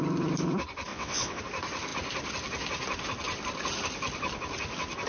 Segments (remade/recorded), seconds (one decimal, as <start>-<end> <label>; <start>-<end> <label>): 0.0-0.9 recorded; 0.9-1.4 remade; 1.4-5.1 recorded